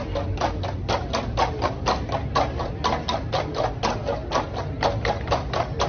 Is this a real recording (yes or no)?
yes